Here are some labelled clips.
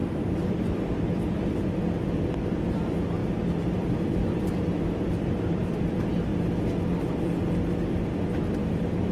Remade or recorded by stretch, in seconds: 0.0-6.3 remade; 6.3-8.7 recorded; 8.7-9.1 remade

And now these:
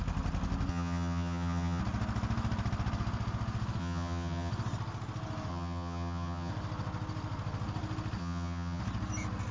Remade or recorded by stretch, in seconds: 0.0-0.7 recorded; 0.7-1.8 remade; 1.8-3.8 recorded; 3.8-4.5 remade; 4.5-5.5 recorded; 5.5-6.5 remade; 6.5-8.2 recorded; 8.2-8.8 remade; 8.8-9.5 recorded

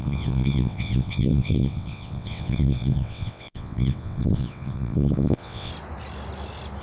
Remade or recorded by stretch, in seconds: 0.0-5.7 remade; 5.7-6.8 recorded

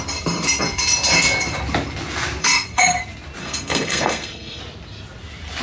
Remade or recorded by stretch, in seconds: 0.0-2.4 recorded; 2.4-3.0 remade; 3.0-3.4 recorded; 3.4-4.6 remade; 4.6-5.6 recorded

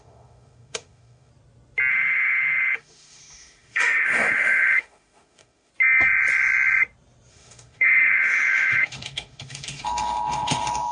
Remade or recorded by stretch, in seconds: 0.0-1.3 remade; 1.3-1.9 recorded; 1.9-5.7 remade; 5.7-7.3 recorded; 7.3-10.9 remade

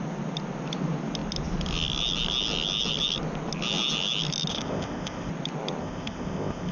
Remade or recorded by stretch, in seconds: 0.0-4.5 recorded; 4.5-5.3 remade; 5.3-5.8 recorded; 5.8-6.7 remade

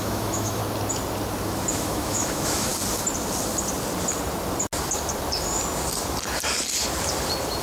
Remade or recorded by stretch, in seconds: 0.0-0.6 remade; 0.6-1.7 recorded; 1.7-2.7 remade; 2.7-7.6 recorded

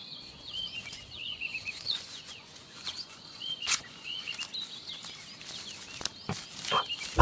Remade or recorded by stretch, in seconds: 0.0-4.3 remade; 4.3-7.2 recorded